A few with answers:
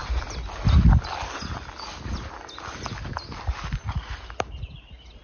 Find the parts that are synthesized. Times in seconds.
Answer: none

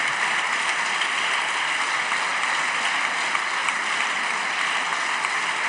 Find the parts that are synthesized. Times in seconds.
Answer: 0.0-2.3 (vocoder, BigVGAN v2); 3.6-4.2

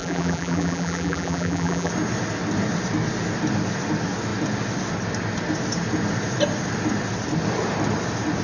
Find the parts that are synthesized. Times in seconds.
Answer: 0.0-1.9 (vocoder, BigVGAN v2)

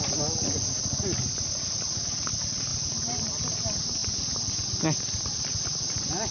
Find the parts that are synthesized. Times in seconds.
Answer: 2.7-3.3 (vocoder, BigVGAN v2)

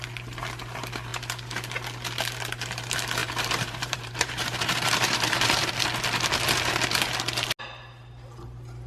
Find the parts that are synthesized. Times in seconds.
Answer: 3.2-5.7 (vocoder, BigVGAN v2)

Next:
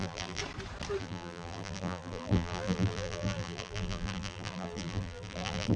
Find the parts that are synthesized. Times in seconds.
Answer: 0.0-0.4 (vocoder, BigVGAN v2); 1.0-5.8

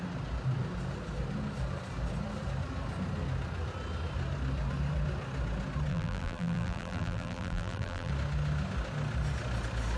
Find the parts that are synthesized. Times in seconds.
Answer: 5.9-8.1 (vocoder, BigVGAN v2)

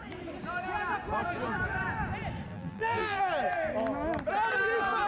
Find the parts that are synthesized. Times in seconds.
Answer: 2.5-3.2 (vocoder, BigVGAN v2)